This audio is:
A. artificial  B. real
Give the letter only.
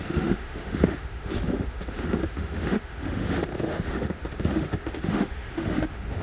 A